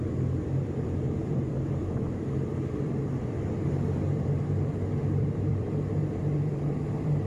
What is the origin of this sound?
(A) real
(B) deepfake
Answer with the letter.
B